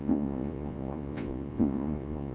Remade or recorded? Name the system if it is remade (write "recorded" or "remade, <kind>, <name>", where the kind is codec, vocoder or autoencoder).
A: remade, vocoder, Vocos